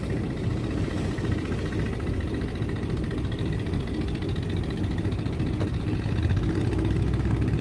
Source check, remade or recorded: recorded